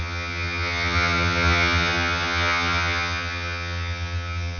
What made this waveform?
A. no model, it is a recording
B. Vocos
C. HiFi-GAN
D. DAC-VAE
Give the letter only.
C